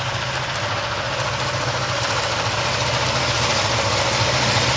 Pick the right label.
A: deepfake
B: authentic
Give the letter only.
B